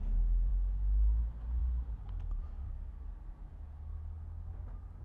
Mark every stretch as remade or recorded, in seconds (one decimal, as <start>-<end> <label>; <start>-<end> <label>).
0.0-5.0 recorded